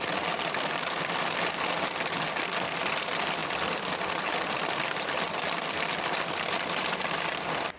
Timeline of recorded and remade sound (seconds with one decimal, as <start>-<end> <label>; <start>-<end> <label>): 0.0-7.8 recorded